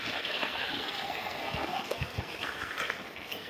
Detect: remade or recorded remade